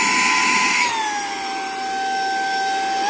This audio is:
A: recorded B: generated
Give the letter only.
A